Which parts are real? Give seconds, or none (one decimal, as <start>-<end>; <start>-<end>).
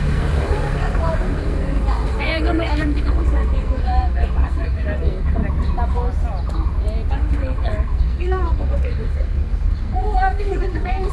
5.4-7.1